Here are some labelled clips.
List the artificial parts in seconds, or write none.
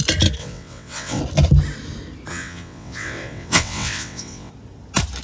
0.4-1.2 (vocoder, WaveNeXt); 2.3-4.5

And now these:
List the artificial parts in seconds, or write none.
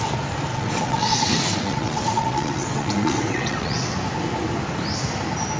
0.5-3.9 (vocoder, WaveNeXt)